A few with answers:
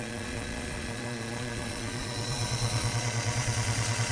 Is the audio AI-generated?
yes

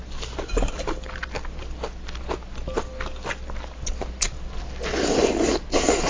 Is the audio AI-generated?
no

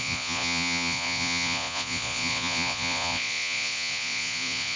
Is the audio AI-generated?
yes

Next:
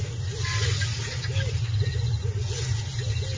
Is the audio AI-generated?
no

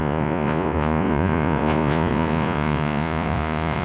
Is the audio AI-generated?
yes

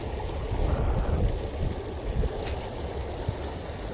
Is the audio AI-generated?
no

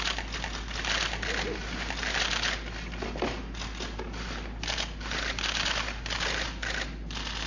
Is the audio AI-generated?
no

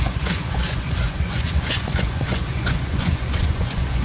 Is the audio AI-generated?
yes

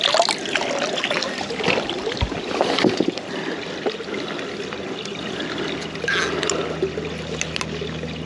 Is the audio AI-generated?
no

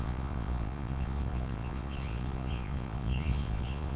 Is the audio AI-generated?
yes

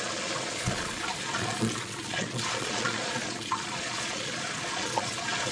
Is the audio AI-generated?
yes